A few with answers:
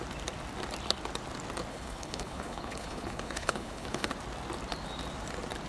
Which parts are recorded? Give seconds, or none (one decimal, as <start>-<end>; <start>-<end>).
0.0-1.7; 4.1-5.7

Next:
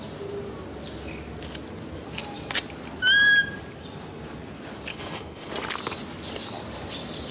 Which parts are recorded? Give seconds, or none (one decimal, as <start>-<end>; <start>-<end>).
0.0-4.9; 5.5-7.3

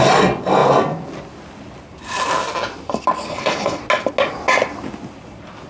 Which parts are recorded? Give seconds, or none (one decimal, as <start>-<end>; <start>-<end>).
0.0-3.3; 3.8-5.7